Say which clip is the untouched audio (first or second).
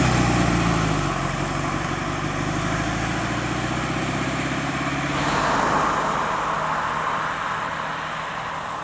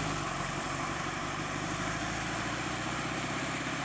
first